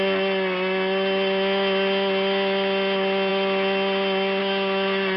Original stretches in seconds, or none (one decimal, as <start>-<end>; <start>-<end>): 0.0-5.2